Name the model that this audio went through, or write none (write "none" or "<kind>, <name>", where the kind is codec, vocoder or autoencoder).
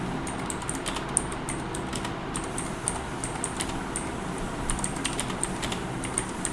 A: none